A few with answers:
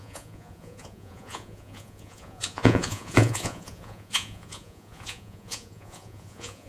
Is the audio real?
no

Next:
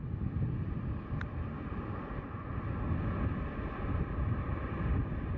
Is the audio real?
yes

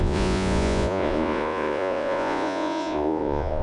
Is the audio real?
no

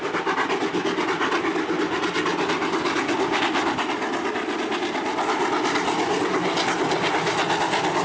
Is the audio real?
yes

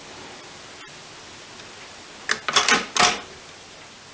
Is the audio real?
yes